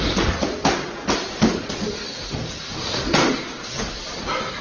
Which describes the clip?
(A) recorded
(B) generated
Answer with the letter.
A